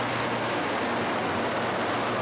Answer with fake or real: real